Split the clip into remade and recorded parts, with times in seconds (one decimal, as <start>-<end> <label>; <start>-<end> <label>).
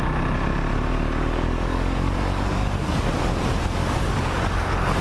0.0-0.9 recorded; 0.9-3.1 remade; 3.1-3.8 recorded; 3.8-5.0 remade